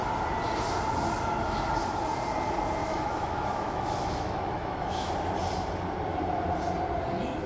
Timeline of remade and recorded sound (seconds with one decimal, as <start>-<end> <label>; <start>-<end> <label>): 0.0-2.8 recorded; 2.8-5.1 remade; 5.1-7.5 recorded